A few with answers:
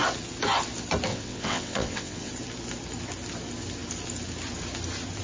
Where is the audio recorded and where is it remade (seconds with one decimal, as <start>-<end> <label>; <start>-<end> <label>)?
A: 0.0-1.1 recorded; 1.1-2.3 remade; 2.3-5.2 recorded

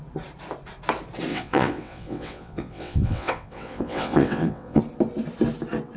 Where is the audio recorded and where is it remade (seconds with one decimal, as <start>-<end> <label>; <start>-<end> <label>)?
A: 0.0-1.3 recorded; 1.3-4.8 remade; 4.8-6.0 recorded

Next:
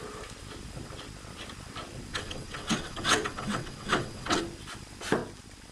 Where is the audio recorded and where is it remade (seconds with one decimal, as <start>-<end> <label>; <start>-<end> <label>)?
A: 0.0-2.1 recorded; 2.1-4.4 remade; 4.4-5.7 recorded

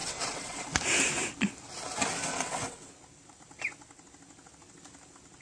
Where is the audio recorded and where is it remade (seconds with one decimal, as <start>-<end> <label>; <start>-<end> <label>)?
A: 0.0-0.6 remade; 0.6-2.3 recorded; 2.3-2.9 remade; 2.9-5.4 recorded

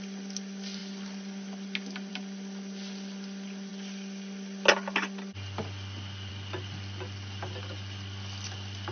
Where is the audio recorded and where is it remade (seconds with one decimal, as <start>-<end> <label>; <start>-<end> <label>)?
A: 0.0-8.9 recorded

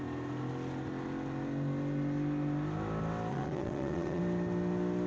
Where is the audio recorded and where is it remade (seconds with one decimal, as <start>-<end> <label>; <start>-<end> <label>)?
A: 0.0-3.3 recorded; 3.3-4.2 remade; 4.2-5.1 recorded

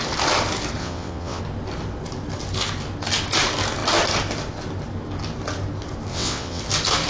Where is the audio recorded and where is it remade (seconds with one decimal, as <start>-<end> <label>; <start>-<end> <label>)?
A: 0.0-0.8 recorded; 0.8-1.4 remade; 1.4-6.1 recorded; 6.1-6.6 remade; 6.6-7.1 recorded

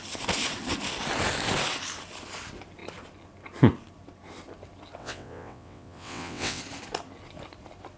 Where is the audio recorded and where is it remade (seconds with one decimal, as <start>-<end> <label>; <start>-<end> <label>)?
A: 0.0-5.0 recorded; 5.0-6.6 remade; 6.6-8.0 recorded